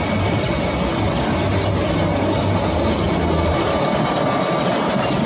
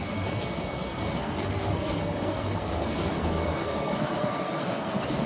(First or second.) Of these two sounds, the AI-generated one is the second